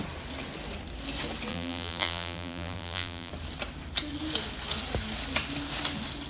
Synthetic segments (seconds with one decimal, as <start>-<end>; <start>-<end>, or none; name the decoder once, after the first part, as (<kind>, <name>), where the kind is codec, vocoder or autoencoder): 1.5-3.3 (vocoder, BigVGAN v2)